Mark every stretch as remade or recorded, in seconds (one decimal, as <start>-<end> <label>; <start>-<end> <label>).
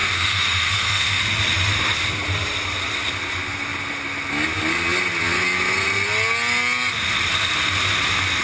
0.0-1.2 remade; 1.2-8.4 recorded